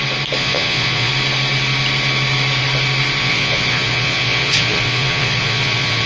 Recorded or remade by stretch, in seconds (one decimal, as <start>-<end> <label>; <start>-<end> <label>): 0.0-0.4 recorded; 0.4-1.1 remade; 1.1-3.2 recorded; 3.2-6.1 remade